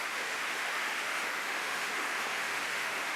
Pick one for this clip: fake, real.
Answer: fake